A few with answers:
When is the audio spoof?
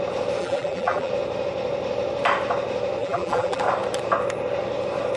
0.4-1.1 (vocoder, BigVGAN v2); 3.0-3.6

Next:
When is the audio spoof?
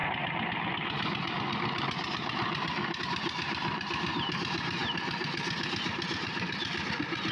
3.0-7.3 (vocoder, BigVGAN v2)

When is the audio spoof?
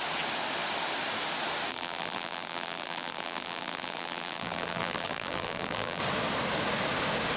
1.7-6.0 (vocoder, BigVGAN v2)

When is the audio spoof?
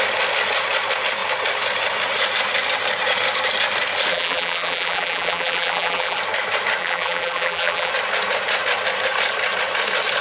4.1-6.2 (vocoder, BigVGAN v2); 6.8-7.9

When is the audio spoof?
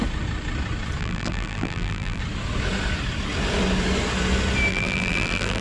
1.0-2.2 (vocoder, BigVGAN v2); 4.7-5.6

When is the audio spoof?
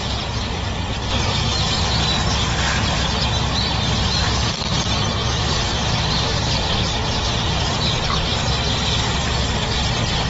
5.2-8.4 (vocoder, BigVGAN v2)